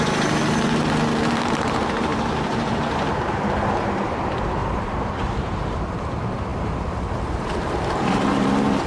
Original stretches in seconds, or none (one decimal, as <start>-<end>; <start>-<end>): 0.4-1.3; 2.1-3.1